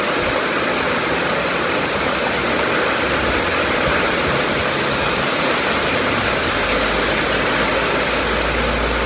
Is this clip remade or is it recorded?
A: recorded